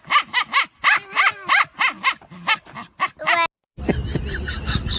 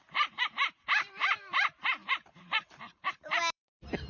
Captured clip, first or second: first